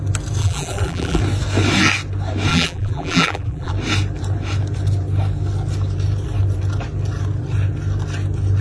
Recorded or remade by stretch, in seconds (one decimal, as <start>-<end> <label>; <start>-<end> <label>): 0.0-0.4 recorded; 0.4-1.2 remade; 1.2-2.5 recorded; 2.5-3.7 remade; 3.7-8.6 recorded